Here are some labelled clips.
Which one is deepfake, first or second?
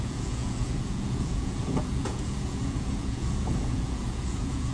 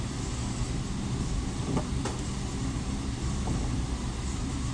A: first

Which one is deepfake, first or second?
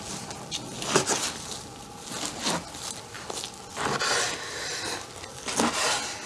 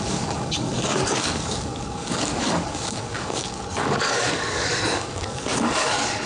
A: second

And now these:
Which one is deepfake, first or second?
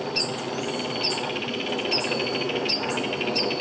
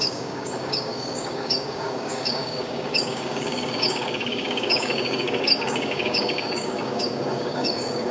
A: second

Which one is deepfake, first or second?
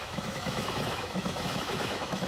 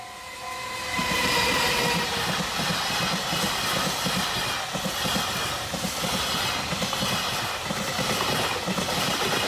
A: first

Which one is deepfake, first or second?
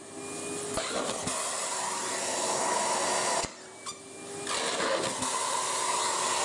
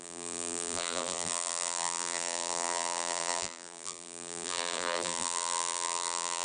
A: second